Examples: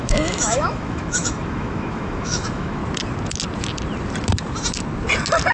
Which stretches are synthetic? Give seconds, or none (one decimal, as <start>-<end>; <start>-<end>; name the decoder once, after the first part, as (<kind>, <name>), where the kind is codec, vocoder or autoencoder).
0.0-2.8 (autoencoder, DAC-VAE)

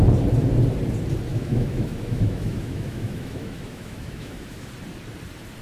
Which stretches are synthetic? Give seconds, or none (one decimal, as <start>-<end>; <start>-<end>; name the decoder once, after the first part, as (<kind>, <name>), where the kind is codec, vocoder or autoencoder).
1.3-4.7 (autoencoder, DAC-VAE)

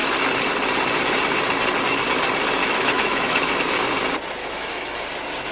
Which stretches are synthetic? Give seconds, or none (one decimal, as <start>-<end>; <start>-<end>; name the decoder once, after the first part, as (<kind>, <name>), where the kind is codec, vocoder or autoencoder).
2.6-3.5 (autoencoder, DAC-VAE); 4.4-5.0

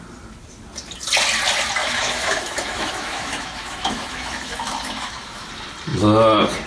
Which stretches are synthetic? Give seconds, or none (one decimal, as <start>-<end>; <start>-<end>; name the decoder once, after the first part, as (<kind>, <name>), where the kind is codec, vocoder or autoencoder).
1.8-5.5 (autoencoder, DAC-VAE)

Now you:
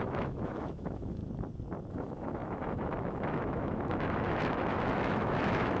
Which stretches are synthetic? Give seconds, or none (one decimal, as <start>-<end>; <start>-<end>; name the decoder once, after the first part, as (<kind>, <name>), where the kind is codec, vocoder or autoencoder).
0.0-1.2 (autoencoder, DAC-VAE); 1.9-5.8